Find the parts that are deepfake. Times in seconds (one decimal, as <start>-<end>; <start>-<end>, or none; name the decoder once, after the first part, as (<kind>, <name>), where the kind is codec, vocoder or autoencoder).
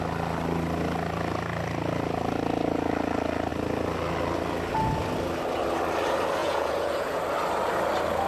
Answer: 6.4-7.2 (vocoder, Vocos)